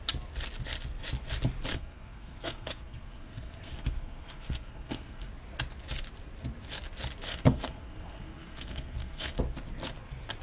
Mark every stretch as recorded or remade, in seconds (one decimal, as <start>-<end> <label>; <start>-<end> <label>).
0.0-1.7 recorded; 1.7-5.3 remade; 5.3-7.3 recorded; 7.3-9.4 remade; 9.4-10.4 recorded